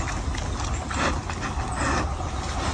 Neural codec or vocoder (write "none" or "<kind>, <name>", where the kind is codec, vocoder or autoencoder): none